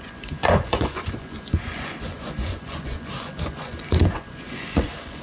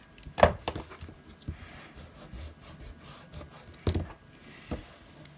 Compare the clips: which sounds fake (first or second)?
first